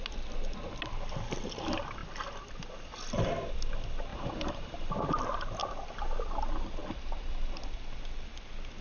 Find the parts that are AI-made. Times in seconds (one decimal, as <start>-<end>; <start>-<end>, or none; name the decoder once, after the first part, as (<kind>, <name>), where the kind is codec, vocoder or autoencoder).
4.1-4.9 (vocoder, BigVGAN v2)